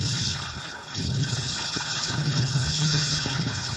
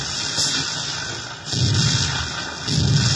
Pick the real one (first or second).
second